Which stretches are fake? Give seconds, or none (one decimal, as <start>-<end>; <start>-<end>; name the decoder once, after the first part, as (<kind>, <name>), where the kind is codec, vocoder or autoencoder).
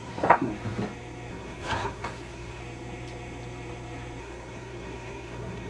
0.0-0.5 (codec, SNAC); 1.3-2.6; 4.2-5.7